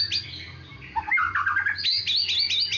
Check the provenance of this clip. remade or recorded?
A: recorded